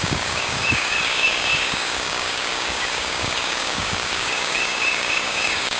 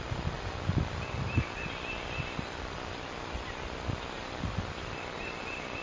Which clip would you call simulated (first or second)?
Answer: first